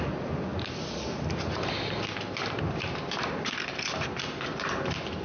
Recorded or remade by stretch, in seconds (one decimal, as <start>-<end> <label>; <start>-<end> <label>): 0.0-5.2 recorded